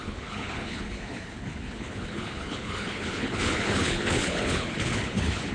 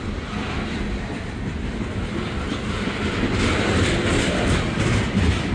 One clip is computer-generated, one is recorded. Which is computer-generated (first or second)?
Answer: first